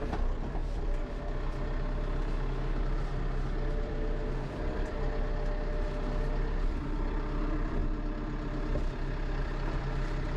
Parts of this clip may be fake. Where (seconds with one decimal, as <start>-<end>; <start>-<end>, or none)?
0.0-0.6; 2.8-7.8; 9.4-10.4